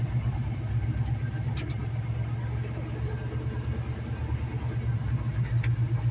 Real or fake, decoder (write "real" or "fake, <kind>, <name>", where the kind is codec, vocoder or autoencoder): real